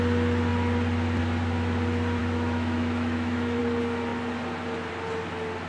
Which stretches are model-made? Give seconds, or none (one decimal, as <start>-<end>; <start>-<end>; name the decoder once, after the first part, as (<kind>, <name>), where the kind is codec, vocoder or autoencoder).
2.2-3.6 (autoencoder, DAC-VAE)